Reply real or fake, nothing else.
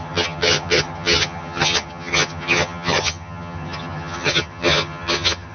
fake